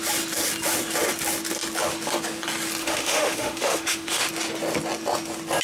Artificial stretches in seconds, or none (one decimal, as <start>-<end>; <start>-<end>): 2.8-4.3